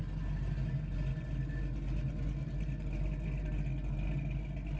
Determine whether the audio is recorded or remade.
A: recorded